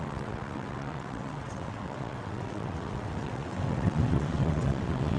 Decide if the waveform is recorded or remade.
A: remade